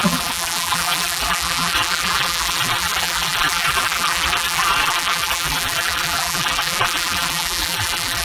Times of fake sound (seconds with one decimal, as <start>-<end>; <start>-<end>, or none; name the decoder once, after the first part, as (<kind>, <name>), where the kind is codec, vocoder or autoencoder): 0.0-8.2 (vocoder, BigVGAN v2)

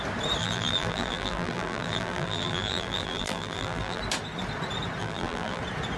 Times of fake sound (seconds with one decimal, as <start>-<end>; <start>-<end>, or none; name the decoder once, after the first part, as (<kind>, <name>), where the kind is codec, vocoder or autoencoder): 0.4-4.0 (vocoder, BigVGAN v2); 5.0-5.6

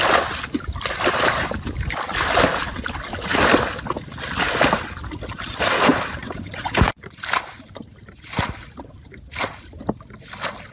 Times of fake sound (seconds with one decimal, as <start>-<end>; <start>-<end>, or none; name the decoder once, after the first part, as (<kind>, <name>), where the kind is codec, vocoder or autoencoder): 5.9-9.9 (vocoder, BigVGAN v2)

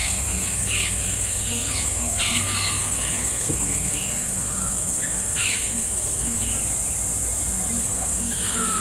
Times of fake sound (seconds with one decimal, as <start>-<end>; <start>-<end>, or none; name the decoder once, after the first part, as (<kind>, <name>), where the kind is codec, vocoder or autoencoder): 0.0-6.5 (codec, SNAC); 7.8-8.8

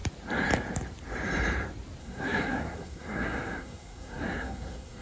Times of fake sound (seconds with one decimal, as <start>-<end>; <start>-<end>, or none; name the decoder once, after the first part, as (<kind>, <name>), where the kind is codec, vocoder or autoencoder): 2.0-5.0 (codec, SNAC)

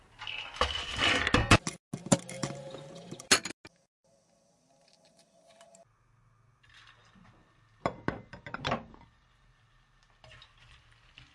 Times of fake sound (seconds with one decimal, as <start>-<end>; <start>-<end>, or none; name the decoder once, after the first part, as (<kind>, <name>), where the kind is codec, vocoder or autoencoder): none

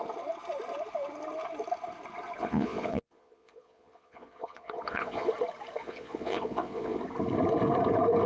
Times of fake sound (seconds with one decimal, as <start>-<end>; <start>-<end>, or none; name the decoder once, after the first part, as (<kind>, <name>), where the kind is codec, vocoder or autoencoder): 2.4-5.3 (vocoder, Vocos); 5.8-7.0

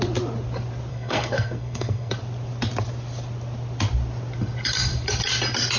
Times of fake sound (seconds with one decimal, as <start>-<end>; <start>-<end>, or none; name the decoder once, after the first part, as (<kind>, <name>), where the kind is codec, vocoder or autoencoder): 0.9-2.1 (codec, SNAC)